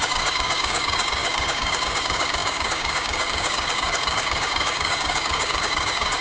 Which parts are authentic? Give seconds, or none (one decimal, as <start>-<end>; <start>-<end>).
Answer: none